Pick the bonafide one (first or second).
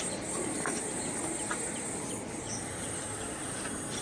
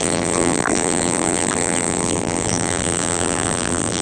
first